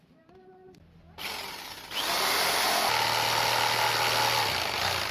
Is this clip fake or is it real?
real